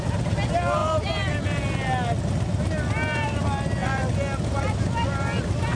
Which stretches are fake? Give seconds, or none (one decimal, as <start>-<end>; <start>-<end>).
none